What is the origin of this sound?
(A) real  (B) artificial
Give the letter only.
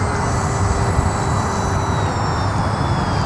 A